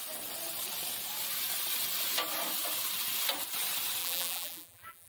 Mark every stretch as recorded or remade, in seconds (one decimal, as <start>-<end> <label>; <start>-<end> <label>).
0.0-4.0 recorded; 4.0-5.1 remade